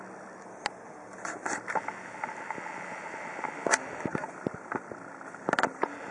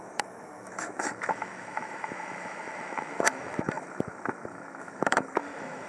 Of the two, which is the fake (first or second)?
second